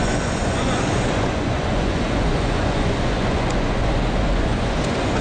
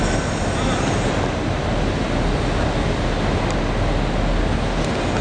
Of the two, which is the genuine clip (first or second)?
second